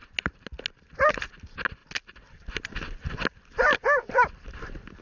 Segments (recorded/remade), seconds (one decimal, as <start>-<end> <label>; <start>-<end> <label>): 0.0-5.0 recorded

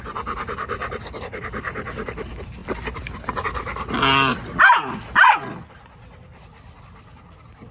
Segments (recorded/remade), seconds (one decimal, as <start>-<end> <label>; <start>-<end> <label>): 0.0-7.7 recorded

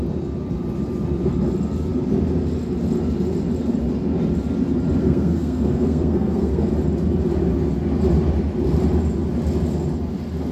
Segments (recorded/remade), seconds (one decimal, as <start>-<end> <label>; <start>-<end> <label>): 0.0-5.0 recorded; 5.0-6.7 remade; 6.7-10.5 recorded

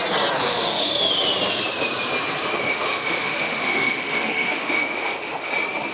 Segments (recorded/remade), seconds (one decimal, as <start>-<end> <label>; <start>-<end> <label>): 0.0-0.5 recorded; 0.5-1.1 remade; 1.1-2.5 recorded; 2.5-5.5 remade; 5.5-5.9 recorded

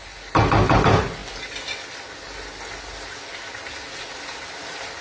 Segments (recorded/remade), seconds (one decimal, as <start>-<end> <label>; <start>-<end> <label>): 0.0-5.0 recorded

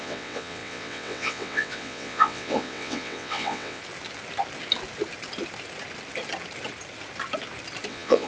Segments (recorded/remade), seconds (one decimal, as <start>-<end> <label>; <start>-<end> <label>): 0.0-3.8 remade; 3.8-7.9 recorded; 7.9-8.3 remade

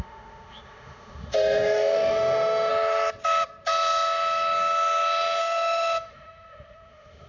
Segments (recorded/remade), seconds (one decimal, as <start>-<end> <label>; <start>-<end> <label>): 0.0-2.7 remade; 2.7-5.4 recorded; 5.4-7.3 remade